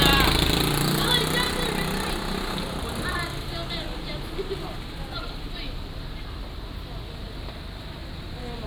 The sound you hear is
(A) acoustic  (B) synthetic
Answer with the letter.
A